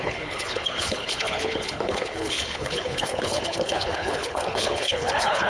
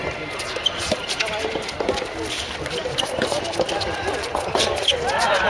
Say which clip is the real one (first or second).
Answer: second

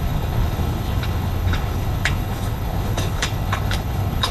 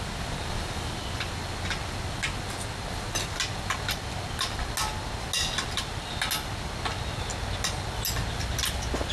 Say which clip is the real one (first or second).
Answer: second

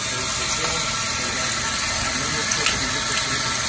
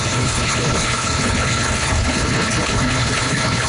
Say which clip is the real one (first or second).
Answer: first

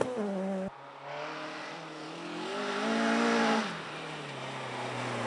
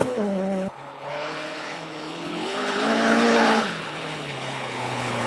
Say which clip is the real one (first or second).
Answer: first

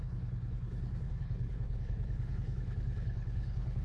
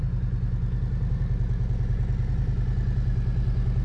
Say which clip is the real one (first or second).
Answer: second